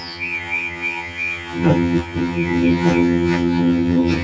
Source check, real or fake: fake